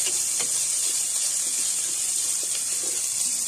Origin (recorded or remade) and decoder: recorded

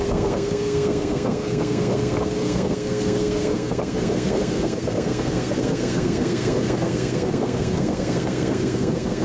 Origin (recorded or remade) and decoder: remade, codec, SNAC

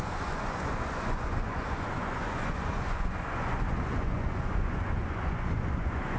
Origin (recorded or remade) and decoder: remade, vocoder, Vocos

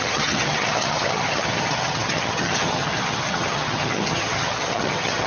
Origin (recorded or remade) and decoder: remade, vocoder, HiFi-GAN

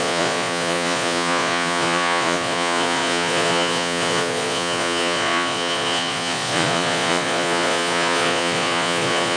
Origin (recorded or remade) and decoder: remade, vocoder, Vocos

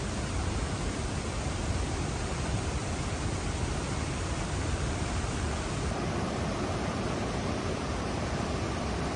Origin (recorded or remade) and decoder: remade, vocoder, BigVGAN v2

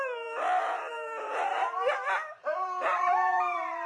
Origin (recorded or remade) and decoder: remade, vocoder, BigVGAN v2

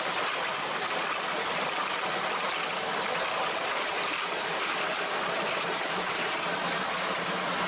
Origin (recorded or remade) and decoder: recorded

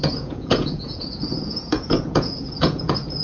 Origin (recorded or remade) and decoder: remade, vocoder, Vocos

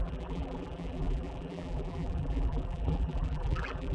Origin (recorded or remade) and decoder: remade, vocoder, BigVGAN v2